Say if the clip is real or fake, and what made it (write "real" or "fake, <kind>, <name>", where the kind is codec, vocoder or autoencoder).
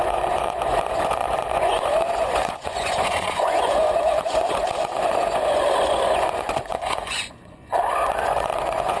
fake, vocoder, Vocos